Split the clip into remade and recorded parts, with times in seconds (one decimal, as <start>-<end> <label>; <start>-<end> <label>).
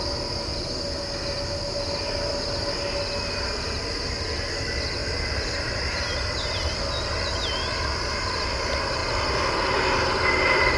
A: 0.0-5.0 recorded; 5.0-6.4 remade; 6.4-10.8 recorded